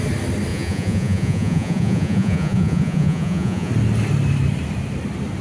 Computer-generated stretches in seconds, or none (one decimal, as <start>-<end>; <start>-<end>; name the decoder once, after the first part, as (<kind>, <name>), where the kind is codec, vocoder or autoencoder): 0.5-3.7 (vocoder, Vocos)